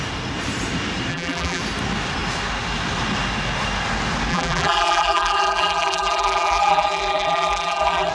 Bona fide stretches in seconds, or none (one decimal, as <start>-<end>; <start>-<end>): 0.0-1.1; 1.6-4.3